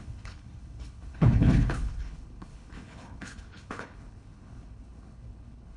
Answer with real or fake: fake